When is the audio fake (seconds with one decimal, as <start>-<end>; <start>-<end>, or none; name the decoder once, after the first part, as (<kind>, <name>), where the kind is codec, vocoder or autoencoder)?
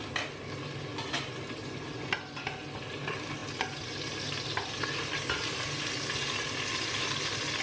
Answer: none